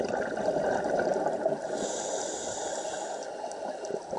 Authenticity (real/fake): real